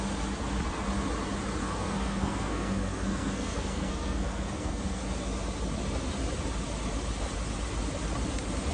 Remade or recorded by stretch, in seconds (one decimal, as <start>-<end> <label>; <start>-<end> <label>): 0.0-1.6 recorded; 1.6-5.0 remade; 5.0-8.7 recorded